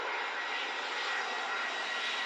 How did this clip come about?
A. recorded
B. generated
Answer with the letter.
A